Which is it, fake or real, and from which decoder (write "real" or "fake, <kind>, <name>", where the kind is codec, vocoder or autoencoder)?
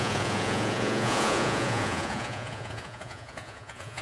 fake, vocoder, Vocos